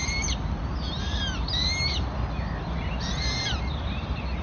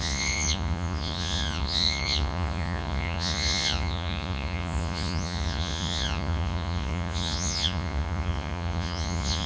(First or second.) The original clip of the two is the first